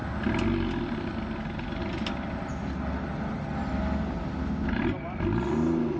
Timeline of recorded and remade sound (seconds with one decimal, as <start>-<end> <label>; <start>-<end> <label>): 0.0-6.0 recorded